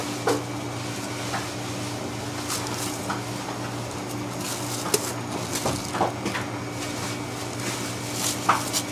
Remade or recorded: recorded